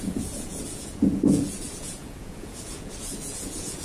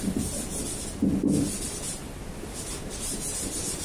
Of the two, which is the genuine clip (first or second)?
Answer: second